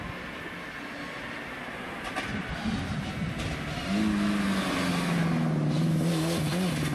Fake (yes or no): no